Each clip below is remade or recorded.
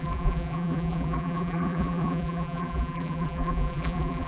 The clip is remade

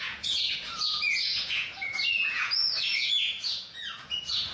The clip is remade